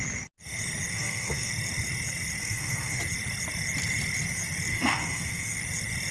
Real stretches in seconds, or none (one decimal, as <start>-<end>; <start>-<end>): 0.0-0.9; 1.5-2.4; 3.0-4.7; 5.6-6.1